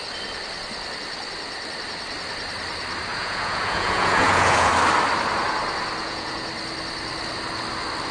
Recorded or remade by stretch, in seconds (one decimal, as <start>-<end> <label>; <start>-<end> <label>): 0.0-3.1 recorded; 3.1-4.7 remade; 4.7-6.0 recorded; 6.0-6.5 remade; 6.5-8.1 recorded